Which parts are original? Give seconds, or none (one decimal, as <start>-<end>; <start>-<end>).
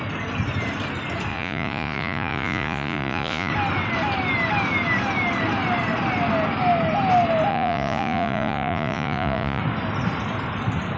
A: 0.0-1.3; 3.5-7.5; 9.6-11.0